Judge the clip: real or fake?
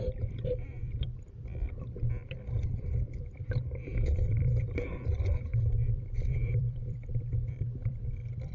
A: fake